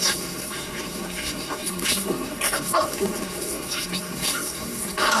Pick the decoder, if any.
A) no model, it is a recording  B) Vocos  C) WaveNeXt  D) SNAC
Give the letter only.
D